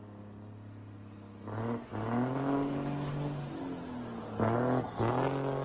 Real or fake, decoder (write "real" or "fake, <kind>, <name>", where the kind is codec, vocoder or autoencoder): real